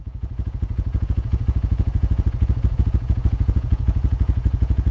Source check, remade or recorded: remade